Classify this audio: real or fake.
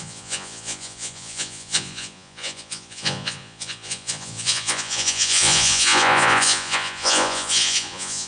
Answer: fake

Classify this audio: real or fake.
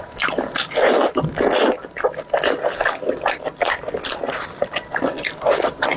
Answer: real